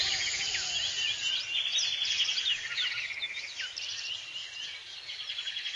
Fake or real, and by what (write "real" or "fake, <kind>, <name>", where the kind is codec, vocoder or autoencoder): real